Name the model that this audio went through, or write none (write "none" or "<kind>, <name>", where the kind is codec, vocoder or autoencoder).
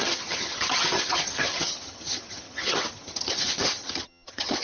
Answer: vocoder, HiFi-GAN